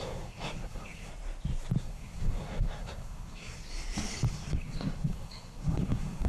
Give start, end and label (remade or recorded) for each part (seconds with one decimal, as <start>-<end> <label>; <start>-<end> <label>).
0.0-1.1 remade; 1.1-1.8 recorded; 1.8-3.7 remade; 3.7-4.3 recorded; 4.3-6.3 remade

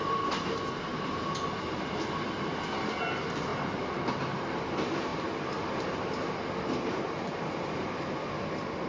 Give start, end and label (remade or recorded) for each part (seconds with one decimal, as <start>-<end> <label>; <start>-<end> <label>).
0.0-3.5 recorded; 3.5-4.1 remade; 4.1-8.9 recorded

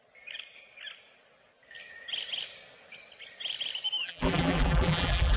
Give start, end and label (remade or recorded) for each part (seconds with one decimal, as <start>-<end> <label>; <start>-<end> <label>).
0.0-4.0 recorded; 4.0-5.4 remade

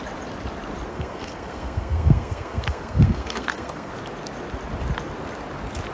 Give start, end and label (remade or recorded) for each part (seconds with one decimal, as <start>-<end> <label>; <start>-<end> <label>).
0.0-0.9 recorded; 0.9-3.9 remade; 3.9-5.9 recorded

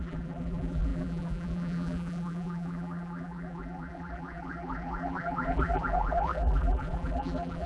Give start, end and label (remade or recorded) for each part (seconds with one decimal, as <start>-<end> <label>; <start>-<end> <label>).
0.0-7.7 remade

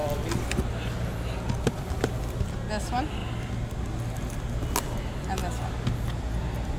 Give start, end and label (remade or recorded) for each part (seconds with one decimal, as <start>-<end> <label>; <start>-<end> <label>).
0.0-6.8 recorded